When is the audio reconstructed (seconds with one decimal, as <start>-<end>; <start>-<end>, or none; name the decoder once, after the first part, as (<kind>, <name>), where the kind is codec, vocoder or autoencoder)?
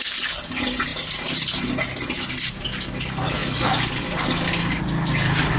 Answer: none